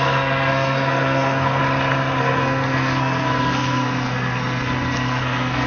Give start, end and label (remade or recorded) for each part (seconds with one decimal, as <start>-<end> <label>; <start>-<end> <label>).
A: 0.0-1.6 remade; 1.6-2.2 recorded; 2.2-5.7 remade